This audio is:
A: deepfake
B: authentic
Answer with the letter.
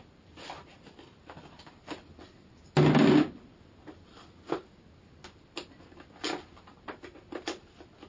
B